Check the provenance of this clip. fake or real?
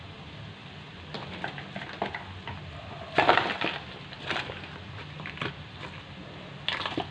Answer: real